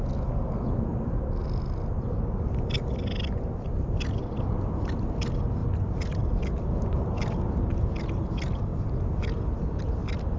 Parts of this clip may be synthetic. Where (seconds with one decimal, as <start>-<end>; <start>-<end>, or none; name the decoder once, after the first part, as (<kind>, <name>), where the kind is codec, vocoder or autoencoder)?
none